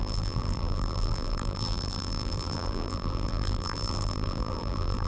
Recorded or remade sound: remade